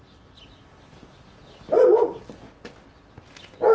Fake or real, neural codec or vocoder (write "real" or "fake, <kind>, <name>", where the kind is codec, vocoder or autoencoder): real